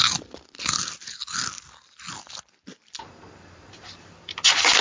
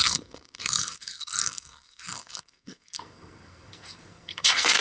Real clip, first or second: first